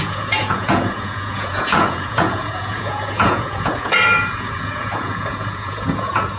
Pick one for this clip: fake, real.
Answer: fake